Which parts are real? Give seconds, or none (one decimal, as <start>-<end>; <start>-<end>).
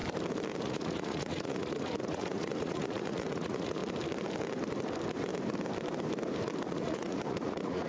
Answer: 0.0-0.6; 3.8-6.7